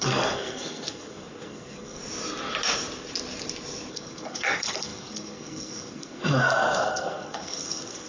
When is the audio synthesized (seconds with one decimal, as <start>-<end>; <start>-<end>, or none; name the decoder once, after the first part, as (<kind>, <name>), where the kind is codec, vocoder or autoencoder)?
0.0-2.0 (codec, SNAC); 3.9-8.1

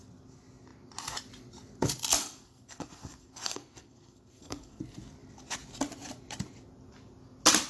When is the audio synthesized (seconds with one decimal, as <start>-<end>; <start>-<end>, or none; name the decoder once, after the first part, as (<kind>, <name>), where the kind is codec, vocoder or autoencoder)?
2.2-4.8 (codec, SNAC)

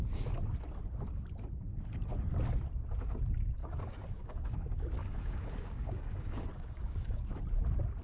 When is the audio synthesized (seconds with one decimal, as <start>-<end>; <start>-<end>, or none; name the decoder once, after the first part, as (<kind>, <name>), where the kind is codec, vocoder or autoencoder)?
3.6-4.4 (codec, DAC); 5.0-7.3

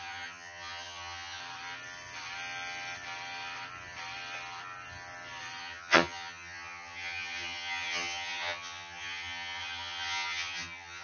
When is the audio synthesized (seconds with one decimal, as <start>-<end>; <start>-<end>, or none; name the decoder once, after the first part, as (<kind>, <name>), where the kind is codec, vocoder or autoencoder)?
0.0-1.4 (vocoder, HiFi-GAN); 5.6-11.0

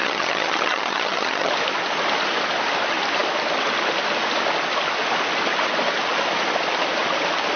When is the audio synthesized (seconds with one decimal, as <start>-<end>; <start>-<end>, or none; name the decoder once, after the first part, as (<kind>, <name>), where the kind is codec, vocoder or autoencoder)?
0.0-1.5 (vocoder, HiFi-GAN)

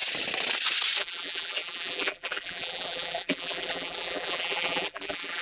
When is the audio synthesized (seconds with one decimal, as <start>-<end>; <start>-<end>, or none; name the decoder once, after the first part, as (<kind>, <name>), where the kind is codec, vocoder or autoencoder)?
1.0-5.4 (vocoder, BigVGAN v2)

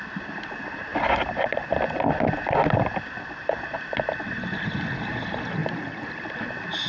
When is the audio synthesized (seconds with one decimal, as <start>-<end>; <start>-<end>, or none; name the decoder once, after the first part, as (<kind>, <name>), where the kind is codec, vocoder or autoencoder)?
5.6-6.9 (vocoder, BigVGAN v2)

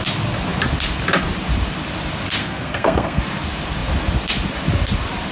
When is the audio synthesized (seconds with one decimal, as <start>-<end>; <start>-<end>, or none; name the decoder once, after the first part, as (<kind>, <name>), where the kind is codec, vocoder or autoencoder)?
2.4-3.2 (codec, SNAC)